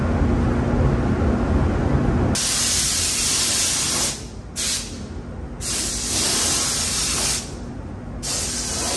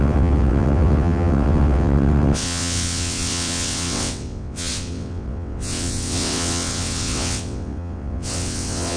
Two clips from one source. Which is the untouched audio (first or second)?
first